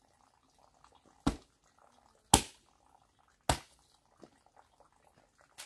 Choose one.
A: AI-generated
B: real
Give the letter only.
B